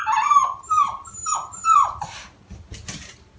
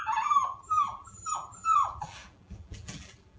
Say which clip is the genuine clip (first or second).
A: first